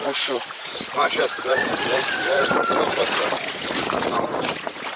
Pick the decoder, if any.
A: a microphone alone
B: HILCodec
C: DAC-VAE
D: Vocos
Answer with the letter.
D